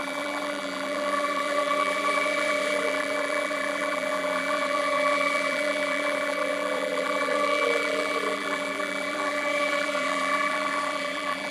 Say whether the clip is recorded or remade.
remade